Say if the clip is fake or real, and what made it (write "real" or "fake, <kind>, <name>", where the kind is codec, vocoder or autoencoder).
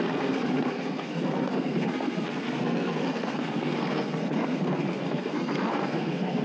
fake, codec, SNAC